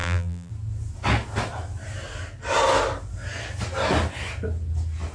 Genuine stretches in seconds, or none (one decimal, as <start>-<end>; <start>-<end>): 0.5-5.1